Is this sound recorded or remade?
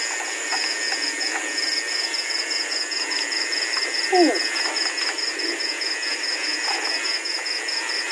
recorded